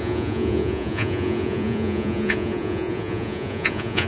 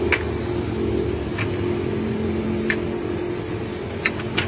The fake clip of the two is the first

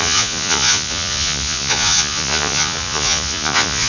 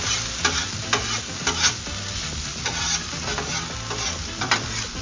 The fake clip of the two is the first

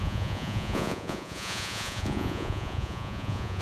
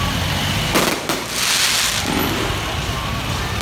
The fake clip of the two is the first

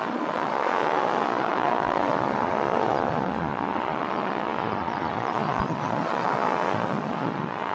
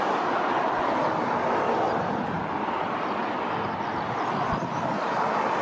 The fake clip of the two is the first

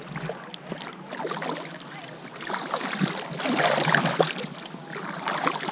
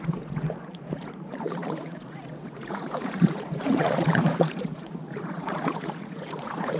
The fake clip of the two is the second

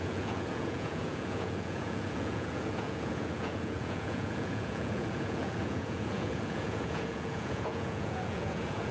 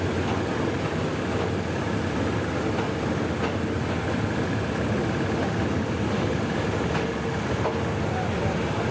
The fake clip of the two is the first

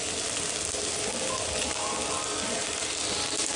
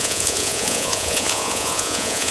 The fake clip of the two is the second